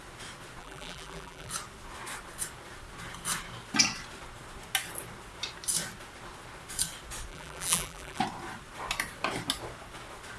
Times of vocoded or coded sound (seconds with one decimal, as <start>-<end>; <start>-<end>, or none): 0.6-1.5; 7.3-8.2